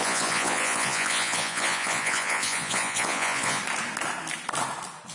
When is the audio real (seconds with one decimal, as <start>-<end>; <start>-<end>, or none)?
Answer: 3.6-5.1

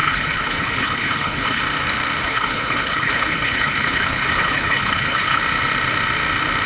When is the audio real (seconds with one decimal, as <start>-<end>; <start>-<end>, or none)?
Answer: 1.6-2.2; 5.4-6.7

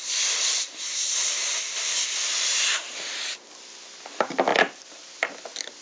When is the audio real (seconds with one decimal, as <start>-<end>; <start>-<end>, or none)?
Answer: 0.0-4.5; 5.2-5.8

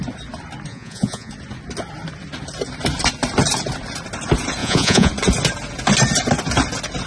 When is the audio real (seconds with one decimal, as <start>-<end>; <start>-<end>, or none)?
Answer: 0.0-0.7; 1.3-4.6; 5.1-7.1

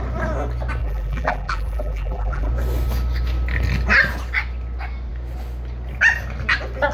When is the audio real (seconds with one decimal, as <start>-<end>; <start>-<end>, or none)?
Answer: 0.0-0.8; 2.5-6.9

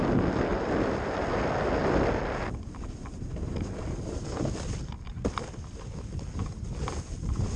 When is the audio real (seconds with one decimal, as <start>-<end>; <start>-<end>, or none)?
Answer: 0.0-0.5; 1.1-7.6

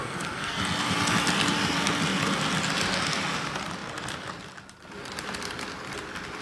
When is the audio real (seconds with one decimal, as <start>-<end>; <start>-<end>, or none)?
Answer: 0.6-6.4

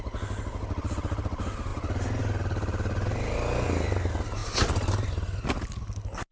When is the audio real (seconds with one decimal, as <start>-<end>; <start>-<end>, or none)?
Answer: 0.0-6.3